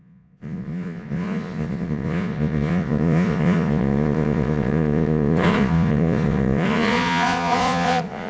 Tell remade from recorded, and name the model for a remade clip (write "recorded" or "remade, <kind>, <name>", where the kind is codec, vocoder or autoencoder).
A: remade, vocoder, Vocos